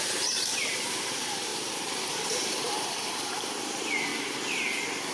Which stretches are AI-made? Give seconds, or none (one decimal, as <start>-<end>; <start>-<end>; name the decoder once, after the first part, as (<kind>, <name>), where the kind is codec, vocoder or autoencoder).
0.0-1.5 (vocoder, BigVGAN v2); 2.1-4.1